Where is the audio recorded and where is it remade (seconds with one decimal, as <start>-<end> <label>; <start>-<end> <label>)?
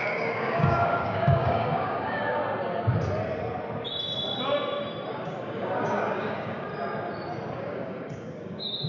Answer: 0.0-2.4 remade; 2.4-5.1 recorded; 5.1-6.7 remade; 6.7-7.6 recorded; 7.6-8.9 remade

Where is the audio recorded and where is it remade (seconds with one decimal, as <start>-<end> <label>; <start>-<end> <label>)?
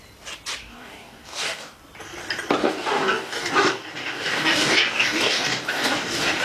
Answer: 0.0-0.6 recorded; 0.6-1.8 remade; 1.8-2.6 recorded; 2.6-6.4 remade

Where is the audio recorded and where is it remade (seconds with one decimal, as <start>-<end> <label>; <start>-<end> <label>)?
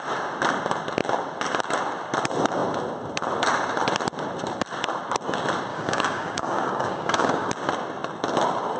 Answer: 0.0-5.7 recorded; 5.7-7.5 remade; 7.5-8.8 recorded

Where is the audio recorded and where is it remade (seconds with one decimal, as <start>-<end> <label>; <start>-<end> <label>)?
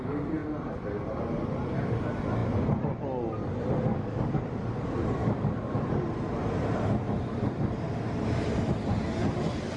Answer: 0.0-3.9 recorded; 3.9-4.4 remade; 4.4-5.2 recorded; 5.2-5.7 remade; 5.7-9.8 recorded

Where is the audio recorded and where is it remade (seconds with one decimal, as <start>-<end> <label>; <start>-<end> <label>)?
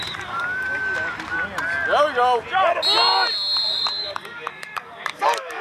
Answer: 0.0-0.8 remade; 0.8-4.0 recorded; 4.0-5.6 remade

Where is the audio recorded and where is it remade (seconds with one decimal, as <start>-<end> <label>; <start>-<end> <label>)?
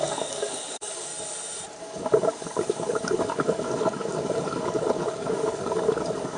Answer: 0.0-1.1 remade; 1.1-1.8 recorded; 1.8-6.4 remade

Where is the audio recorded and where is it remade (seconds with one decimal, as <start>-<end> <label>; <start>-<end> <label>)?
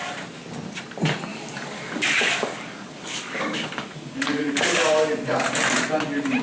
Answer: 0.0-1.3 recorded; 1.3-5.1 remade; 5.1-6.4 recorded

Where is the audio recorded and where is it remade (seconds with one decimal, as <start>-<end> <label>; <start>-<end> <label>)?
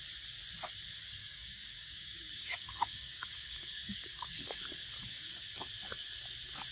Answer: 0.0-1.2 recorded; 1.2-4.6 remade; 4.6-5.1 recorded; 5.1-5.6 remade; 5.6-6.7 recorded